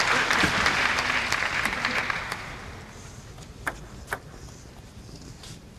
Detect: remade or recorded recorded